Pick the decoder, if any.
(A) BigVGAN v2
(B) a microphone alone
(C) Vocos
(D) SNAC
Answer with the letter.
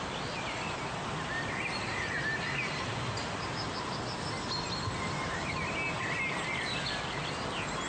B